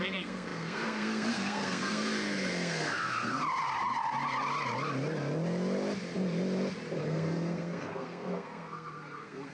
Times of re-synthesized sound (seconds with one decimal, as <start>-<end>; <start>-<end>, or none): 0.0-3.4; 7.0-9.5